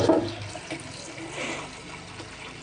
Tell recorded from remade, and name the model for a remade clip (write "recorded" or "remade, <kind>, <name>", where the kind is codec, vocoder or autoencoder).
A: recorded